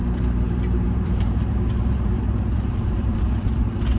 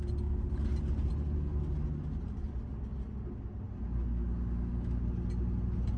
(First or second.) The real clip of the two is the second